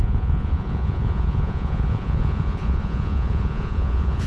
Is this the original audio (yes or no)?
no